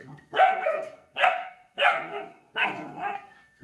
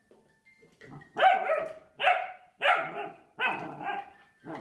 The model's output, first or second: first